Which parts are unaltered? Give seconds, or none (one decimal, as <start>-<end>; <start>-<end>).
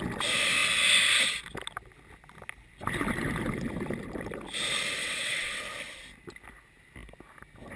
0.0-5.0; 5.6-7.8